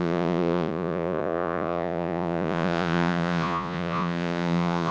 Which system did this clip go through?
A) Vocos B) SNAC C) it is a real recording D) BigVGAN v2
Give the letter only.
A